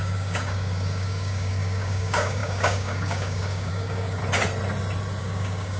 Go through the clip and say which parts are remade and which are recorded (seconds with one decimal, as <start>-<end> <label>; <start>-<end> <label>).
0.0-4.2 remade; 4.2-5.2 recorded; 5.2-5.8 remade